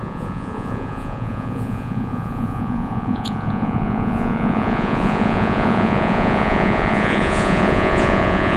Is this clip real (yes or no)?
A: no